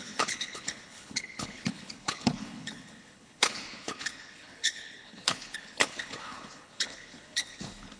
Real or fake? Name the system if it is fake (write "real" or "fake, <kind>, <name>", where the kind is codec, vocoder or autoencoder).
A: fake, codec, HILCodec